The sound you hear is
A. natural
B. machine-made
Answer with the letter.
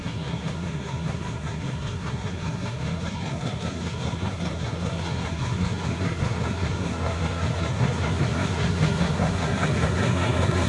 B